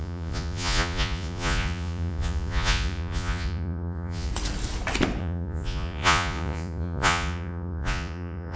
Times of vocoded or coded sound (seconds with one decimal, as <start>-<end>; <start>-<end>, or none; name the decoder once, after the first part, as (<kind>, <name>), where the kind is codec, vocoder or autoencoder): 0.0-4.3 (vocoder, Vocos); 5.2-8.6